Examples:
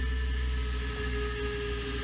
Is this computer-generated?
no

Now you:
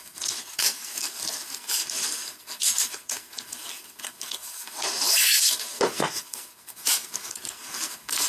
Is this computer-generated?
yes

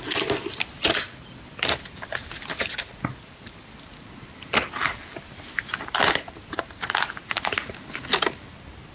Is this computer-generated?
no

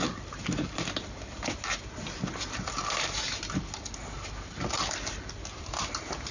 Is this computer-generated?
no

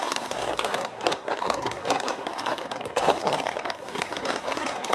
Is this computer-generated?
yes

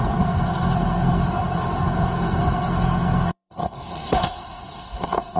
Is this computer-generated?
yes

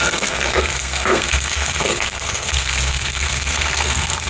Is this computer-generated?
yes